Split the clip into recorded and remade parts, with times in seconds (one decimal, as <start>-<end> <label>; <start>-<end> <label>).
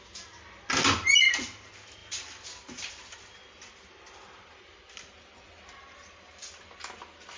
0.0-7.4 recorded